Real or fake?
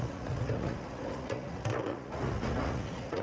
fake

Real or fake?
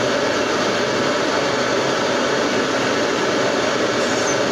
real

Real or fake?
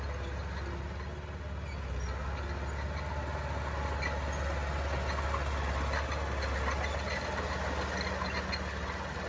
real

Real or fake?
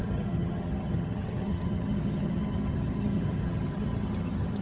fake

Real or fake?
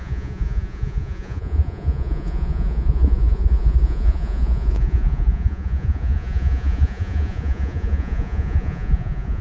fake